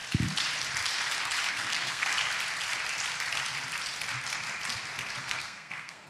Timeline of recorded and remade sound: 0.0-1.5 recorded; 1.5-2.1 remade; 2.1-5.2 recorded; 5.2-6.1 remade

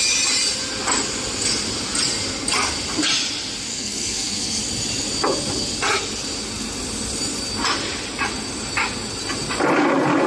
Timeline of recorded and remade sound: 0.0-3.7 recorded; 3.7-4.6 remade; 4.6-10.3 recorded

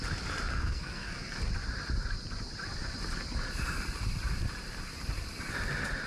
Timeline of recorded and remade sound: 0.0-0.5 recorded; 0.5-1.4 remade; 1.4-6.1 recorded